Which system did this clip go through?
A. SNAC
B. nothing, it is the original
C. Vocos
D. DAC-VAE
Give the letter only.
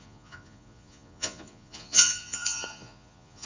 C